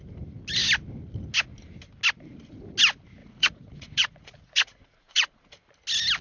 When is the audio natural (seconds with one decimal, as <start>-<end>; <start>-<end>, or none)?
0.0-3.2; 5.5-6.2

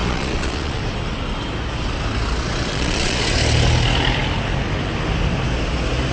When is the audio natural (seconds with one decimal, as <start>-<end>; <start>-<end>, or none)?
0.8-2.7; 3.2-6.1

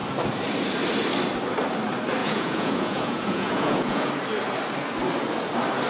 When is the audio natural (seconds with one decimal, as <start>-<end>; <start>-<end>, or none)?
0.0-2.2; 4.1-5.9

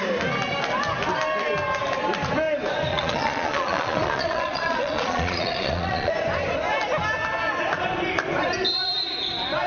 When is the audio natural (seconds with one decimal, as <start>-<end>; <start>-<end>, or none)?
0.0-2.9; 6.1-9.7

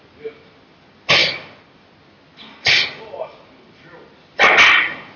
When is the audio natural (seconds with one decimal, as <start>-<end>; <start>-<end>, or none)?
0.0-5.2